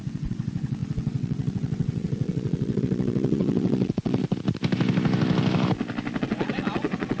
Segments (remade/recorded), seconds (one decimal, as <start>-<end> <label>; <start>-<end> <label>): 0.0-4.2 remade; 4.2-6.2 recorded; 6.2-7.2 remade